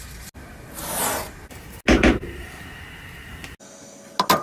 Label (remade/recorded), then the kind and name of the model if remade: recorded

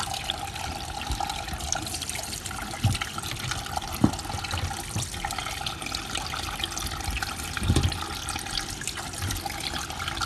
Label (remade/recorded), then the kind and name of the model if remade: recorded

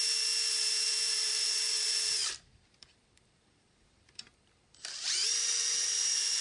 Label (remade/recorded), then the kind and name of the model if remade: remade, vocoder, BigVGAN v2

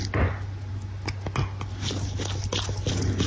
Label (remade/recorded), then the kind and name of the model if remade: recorded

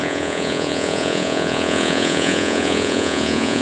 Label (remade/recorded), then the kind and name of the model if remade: remade, vocoder, Vocos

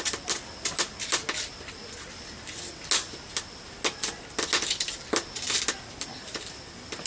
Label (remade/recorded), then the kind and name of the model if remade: recorded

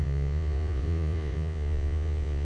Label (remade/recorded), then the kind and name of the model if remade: remade, vocoder, Vocos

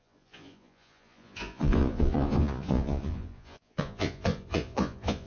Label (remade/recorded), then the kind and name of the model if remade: remade, vocoder, Vocos